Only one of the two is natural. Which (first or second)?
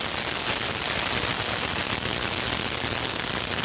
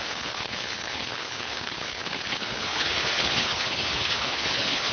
first